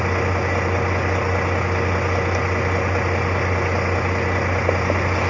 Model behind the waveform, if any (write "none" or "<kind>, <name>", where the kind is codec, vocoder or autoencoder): none